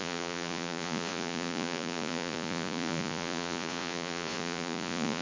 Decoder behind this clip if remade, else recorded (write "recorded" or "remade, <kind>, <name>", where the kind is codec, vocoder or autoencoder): remade, vocoder, Vocos